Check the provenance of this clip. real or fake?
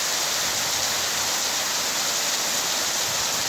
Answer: real